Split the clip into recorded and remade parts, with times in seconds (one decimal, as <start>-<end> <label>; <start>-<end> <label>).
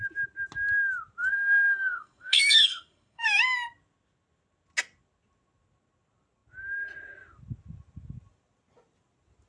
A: 0.0-1.2 recorded; 1.2-3.4 remade; 3.4-9.5 recorded